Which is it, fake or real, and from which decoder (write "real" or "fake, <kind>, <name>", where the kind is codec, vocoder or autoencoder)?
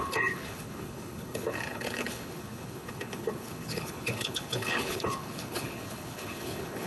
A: fake, codec, HILCodec